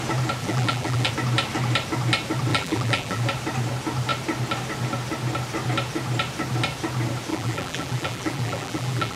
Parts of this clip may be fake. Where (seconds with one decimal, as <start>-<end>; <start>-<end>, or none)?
0.4-1.1; 2.5-3.2; 7.3-9.2

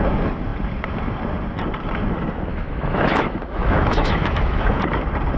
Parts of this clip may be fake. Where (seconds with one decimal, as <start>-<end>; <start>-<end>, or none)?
2.5-4.8

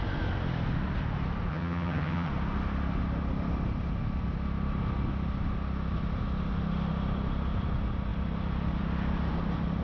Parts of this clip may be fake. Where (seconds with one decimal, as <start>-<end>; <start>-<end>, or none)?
1.5-2.3

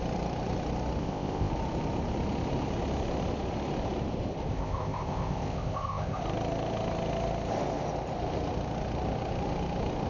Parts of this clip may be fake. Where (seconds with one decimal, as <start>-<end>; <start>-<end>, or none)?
1.0-1.5; 4.5-6.2

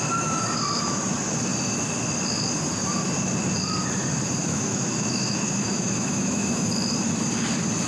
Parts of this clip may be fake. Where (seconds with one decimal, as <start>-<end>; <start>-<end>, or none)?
4.4-6.7

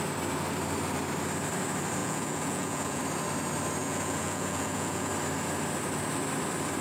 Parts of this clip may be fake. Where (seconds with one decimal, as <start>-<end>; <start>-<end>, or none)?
2.0-3.0; 3.8-5.1